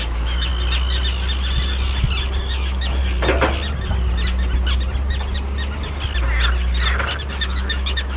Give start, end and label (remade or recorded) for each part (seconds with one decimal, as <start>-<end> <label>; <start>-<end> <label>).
0.0-0.5 remade; 0.5-2.5 recorded; 2.5-3.0 remade; 3.0-7.3 recorded; 7.3-8.2 remade